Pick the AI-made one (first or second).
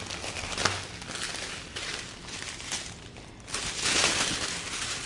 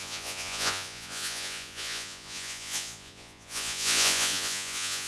second